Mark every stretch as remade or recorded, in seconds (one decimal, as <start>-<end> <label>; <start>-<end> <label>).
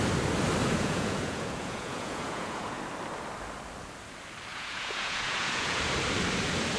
0.0-0.6 recorded; 0.6-2.8 remade; 2.8-4.5 recorded; 4.5-5.8 remade; 5.8-6.8 recorded